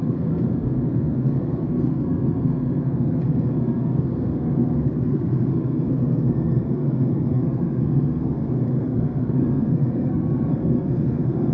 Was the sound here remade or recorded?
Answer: remade